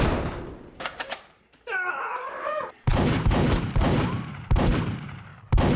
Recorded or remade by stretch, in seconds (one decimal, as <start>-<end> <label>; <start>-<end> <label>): 0.0-5.3 remade; 5.3-5.8 recorded